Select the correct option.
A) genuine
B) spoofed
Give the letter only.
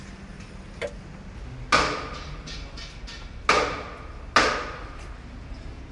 A